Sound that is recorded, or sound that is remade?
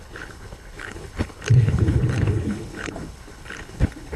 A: remade